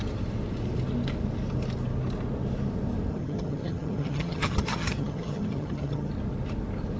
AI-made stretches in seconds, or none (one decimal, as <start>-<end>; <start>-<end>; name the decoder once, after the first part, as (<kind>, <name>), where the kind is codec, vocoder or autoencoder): 3.1-6.1 (vocoder, HiFi-GAN)